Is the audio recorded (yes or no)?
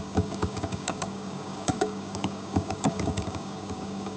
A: no